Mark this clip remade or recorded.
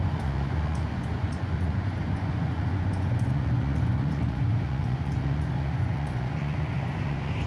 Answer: remade